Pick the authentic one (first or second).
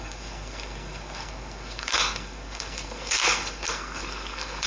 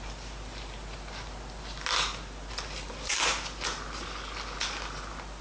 second